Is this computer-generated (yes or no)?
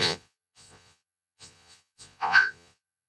yes